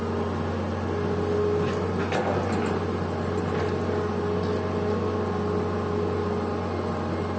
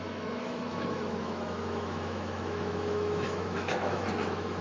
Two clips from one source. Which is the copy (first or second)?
second